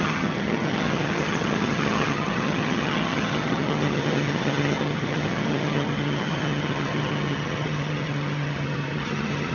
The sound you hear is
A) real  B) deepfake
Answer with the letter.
B